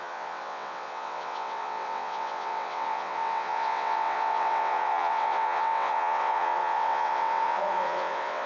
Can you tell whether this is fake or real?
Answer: fake